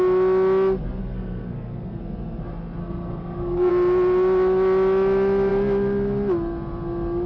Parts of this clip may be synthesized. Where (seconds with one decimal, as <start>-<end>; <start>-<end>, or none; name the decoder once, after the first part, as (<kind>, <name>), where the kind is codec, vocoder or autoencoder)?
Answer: 1.0-2.0 (codec, SNAC); 2.8-3.7